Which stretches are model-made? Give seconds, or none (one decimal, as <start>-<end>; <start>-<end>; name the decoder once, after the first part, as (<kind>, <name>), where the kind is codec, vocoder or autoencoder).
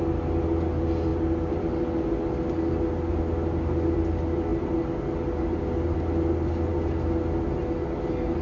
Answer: none